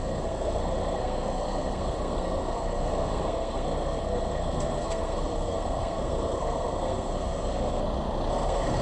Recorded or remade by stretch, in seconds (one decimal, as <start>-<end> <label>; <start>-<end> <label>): 0.0-7.8 remade; 7.8-8.3 recorded; 8.3-8.8 remade